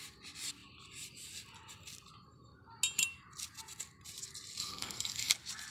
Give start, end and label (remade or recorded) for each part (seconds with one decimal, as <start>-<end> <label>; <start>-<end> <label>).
0.0-4.6 recorded; 4.6-5.3 remade; 5.3-5.7 recorded